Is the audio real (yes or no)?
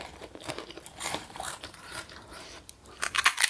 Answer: no